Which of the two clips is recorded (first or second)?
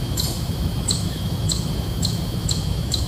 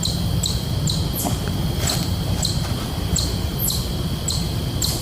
second